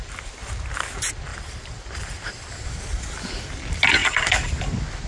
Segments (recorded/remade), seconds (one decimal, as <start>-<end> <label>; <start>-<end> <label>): 0.0-1.3 recorded; 1.3-2.4 remade; 2.4-5.1 recorded